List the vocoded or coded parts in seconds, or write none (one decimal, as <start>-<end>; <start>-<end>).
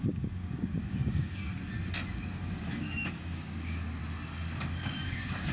0.0-1.5; 2.1-4.0; 5.0-5.5